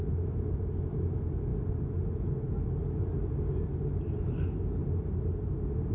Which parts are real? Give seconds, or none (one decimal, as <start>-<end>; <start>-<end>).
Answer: 0.0-5.9